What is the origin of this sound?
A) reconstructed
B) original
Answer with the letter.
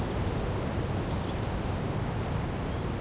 B